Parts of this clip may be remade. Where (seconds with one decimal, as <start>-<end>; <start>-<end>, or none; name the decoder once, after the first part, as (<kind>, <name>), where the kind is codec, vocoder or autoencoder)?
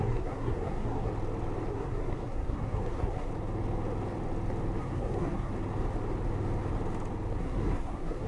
0.0-1.1 (codec, SNAC); 1.7-3.3; 4.8-5.5; 7.4-8.3